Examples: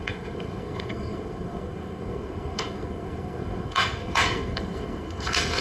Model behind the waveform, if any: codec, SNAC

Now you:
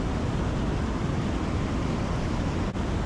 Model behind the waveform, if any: none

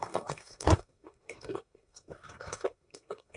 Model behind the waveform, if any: codec, SNAC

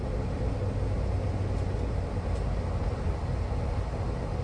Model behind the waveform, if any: none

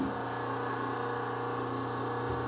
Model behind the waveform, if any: none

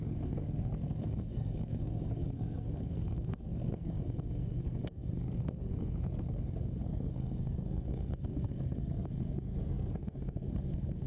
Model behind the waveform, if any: codec, SNAC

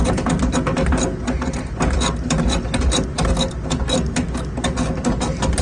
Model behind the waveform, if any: none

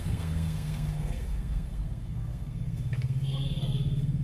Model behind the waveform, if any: codec, SNAC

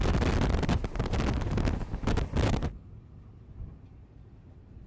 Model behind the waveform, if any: none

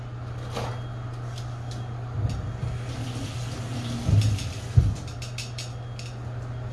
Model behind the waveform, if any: none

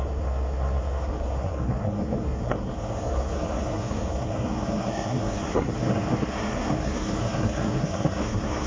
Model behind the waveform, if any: codec, SNAC